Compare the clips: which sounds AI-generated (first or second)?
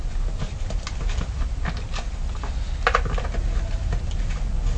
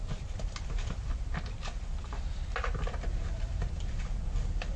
second